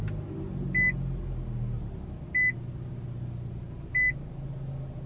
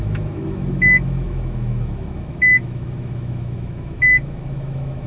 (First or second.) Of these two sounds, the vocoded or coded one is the second